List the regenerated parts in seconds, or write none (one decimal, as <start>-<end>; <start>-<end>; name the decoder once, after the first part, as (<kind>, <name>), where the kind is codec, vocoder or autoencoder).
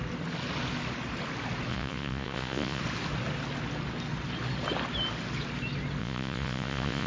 1.7-2.8 (vocoder, Vocos); 6.0-7.1